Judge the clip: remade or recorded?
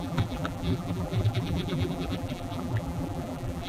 remade